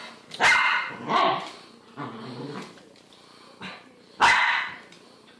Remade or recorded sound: recorded